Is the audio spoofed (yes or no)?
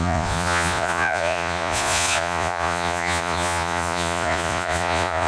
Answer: yes